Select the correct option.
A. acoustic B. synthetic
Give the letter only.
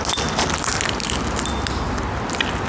A